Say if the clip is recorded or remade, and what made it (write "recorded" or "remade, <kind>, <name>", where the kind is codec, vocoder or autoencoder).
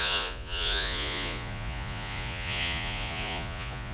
remade, vocoder, Vocos